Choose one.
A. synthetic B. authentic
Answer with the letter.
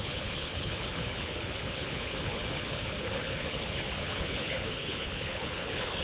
A